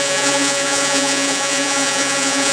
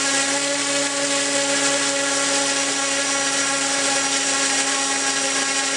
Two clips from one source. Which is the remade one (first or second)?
first